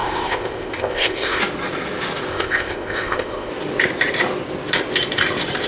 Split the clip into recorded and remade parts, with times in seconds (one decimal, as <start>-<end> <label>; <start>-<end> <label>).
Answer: 0.0-1.4 remade; 1.4-2.3 recorded; 2.3-3.5 remade; 3.5-5.7 recorded